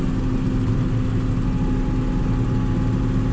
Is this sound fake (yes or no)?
no